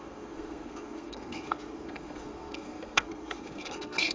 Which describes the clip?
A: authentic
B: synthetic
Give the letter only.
B